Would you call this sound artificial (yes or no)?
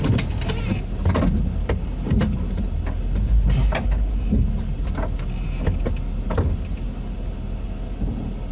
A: no